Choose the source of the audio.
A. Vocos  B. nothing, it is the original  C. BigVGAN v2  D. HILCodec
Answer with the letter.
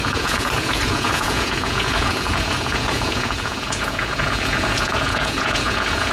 A